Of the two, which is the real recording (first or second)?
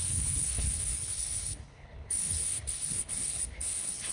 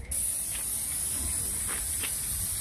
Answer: second